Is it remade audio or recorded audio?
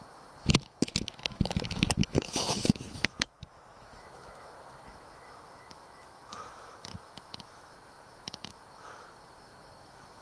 remade